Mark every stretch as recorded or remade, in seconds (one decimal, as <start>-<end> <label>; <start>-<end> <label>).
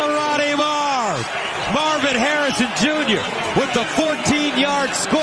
0.0-3.2 recorded; 3.2-4.3 remade; 4.3-5.2 recorded